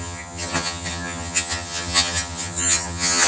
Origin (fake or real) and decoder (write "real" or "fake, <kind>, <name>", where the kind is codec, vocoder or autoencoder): fake, vocoder, HiFi-GAN